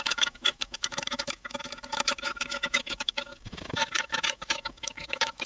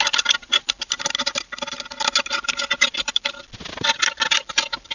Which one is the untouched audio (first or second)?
second